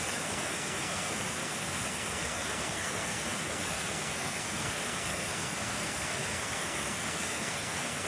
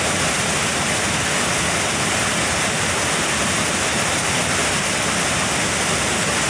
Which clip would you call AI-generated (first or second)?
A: first